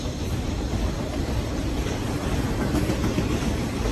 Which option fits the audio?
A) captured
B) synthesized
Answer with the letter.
A